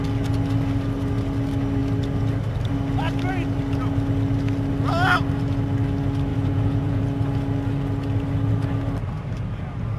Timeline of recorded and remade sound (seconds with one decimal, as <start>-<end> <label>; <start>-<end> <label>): 0.0-6.3 recorded; 6.3-7.0 remade; 7.0-10.0 recorded